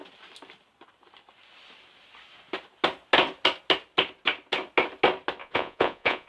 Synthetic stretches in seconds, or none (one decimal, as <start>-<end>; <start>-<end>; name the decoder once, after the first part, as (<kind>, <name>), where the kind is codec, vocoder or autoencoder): 5.4-6.3 (vocoder, Vocos)